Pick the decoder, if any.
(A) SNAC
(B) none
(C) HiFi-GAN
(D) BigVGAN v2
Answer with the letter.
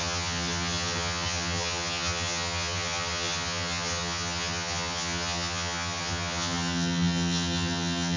C